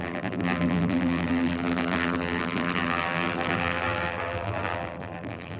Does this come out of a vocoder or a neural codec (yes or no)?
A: yes